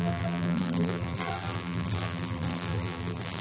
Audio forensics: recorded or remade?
remade